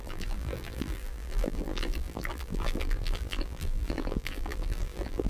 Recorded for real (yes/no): no